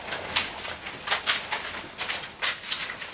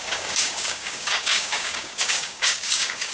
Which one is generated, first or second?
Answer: second